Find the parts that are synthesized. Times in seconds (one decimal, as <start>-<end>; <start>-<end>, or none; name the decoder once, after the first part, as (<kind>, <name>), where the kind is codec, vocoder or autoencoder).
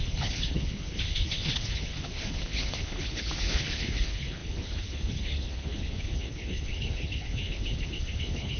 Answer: 0.0-8.6 (codec, HILCodec)